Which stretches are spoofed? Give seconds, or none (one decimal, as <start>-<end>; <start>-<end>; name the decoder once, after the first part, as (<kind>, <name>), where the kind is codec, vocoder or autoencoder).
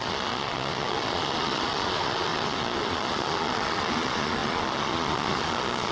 0.0-5.9 (vocoder, Vocos)